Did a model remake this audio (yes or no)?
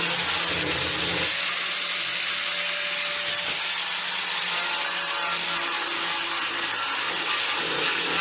no